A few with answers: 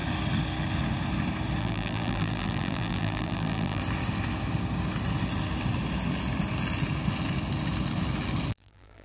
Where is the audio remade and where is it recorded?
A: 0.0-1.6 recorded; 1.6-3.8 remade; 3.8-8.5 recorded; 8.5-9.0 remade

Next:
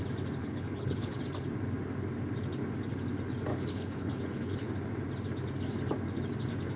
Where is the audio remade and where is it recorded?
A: 0.0-0.4 recorded; 0.4-1.2 remade; 1.2-3.5 recorded; 3.5-4.7 remade; 4.7-6.8 recorded

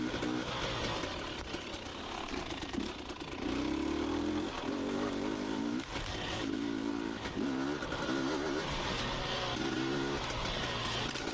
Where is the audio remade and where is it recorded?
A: 0.0-11.3 recorded